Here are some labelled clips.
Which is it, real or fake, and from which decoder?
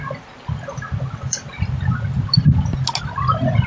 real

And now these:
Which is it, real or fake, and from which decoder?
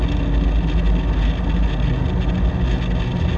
real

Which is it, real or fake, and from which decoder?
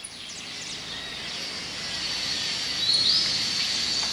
real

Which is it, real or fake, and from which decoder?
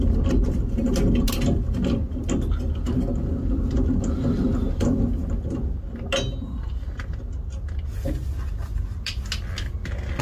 real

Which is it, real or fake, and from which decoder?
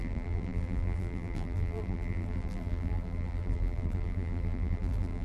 fake, vocoder, BigVGAN v2